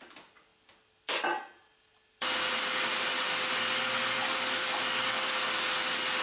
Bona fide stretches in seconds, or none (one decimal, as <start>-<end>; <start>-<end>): 0.0-6.2